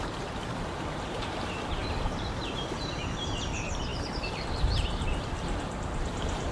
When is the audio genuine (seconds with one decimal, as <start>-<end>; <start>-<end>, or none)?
none